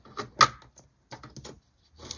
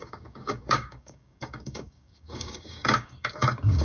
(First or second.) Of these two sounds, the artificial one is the second